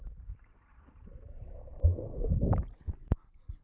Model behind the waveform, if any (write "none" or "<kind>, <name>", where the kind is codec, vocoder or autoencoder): none